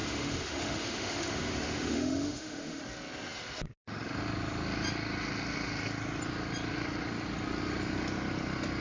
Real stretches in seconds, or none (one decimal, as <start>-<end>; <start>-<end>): 2.8-8.8